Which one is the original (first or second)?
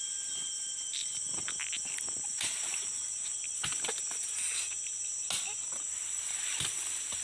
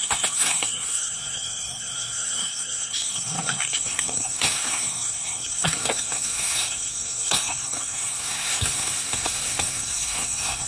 first